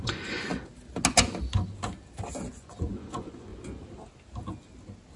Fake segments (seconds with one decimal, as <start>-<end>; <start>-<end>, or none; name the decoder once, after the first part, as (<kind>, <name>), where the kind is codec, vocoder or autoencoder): 0.0-0.5 (vocoder, Vocos); 2.5-3.5